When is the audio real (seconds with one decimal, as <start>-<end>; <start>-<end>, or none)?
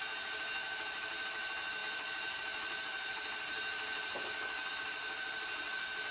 0.0-6.1